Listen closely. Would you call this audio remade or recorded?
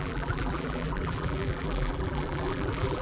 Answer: remade